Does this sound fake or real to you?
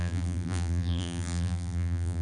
fake